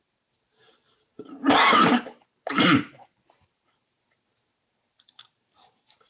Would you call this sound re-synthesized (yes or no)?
yes